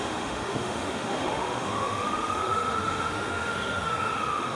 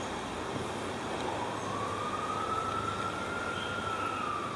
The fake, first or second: first